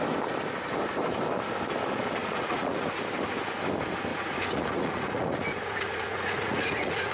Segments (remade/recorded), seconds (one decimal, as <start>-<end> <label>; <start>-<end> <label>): 0.0-2.2 recorded; 2.2-2.9 remade; 2.9-4.1 recorded; 4.1-7.1 remade